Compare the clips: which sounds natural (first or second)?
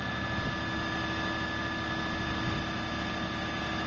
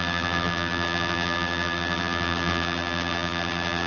first